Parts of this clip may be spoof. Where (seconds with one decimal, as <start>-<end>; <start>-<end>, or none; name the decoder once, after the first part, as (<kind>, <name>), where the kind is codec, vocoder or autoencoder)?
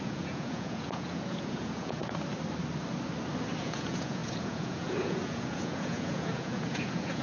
0.0-2.0 (vocoder, Vocos); 3.6-7.2